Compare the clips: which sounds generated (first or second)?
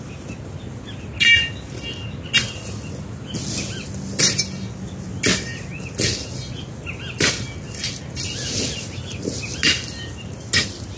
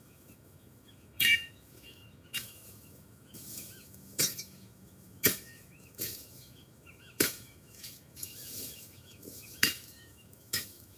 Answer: second